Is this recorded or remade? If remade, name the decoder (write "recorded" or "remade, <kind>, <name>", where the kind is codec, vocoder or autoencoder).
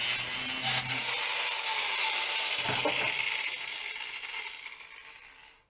recorded